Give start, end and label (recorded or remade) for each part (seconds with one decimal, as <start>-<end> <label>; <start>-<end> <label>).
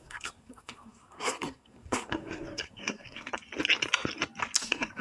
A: 0.0-3.3 remade; 3.3-4.6 recorded; 4.6-5.0 remade